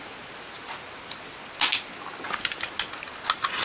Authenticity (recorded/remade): recorded